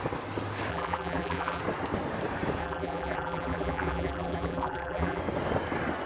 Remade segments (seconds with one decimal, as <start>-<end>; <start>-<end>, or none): 0.7-1.6; 2.6-5.2